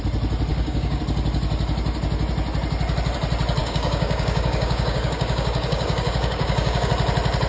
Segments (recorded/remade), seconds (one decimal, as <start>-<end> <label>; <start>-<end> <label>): 0.0-0.5 recorded; 0.5-1.0 remade; 1.0-3.6 recorded; 3.6-6.9 remade; 6.9-7.5 recorded